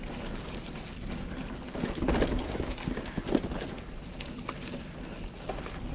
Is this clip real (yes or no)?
yes